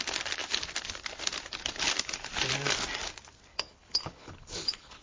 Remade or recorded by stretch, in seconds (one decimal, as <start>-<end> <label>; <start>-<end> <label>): 0.0-3.5 recorded; 3.5-5.0 remade